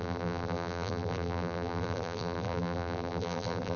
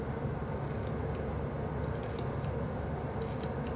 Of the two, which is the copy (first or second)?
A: first